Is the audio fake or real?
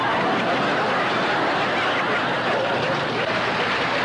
real